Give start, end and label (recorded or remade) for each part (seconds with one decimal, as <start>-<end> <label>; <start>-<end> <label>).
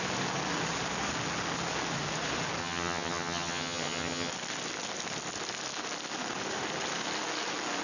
0.0-2.6 recorded; 2.6-4.3 remade; 4.3-7.8 recorded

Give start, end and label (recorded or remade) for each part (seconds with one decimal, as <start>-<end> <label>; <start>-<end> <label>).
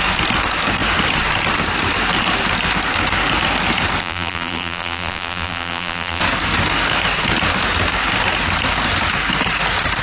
0.0-4.0 recorded; 4.0-6.2 remade; 6.2-10.0 recorded